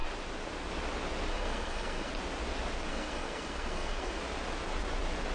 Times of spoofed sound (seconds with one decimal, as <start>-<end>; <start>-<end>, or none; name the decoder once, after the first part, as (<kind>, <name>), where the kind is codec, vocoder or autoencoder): 1.3-2.1 (codec, SNAC); 2.9-4.2